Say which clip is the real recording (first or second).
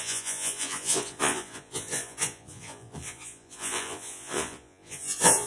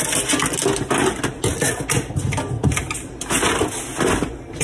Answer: second